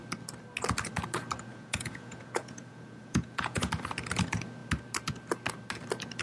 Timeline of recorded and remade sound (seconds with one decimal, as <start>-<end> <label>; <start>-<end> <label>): 0.0-1.5 recorded; 1.5-3.7 remade; 3.7-6.2 recorded